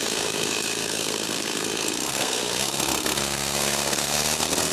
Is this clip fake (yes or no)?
yes